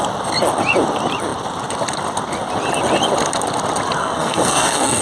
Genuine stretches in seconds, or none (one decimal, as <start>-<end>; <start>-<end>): 0.0-4.0